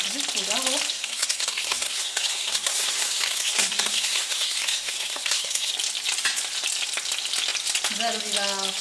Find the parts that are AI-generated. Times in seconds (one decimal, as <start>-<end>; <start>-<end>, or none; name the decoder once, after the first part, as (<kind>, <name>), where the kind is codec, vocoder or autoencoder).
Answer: 0.9-5.7 (codec, SNAC)